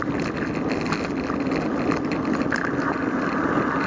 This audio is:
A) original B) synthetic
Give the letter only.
A